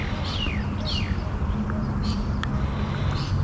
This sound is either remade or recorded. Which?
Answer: recorded